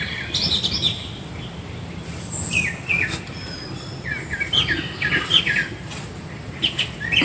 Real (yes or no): yes